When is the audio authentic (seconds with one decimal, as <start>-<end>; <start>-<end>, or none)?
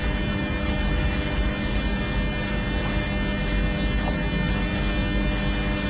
2.0-5.9